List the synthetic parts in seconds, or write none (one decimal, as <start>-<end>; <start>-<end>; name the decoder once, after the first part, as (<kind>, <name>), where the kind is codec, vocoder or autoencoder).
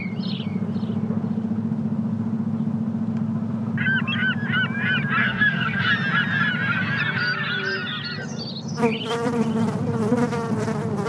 5.2-5.8 (codec, SNAC)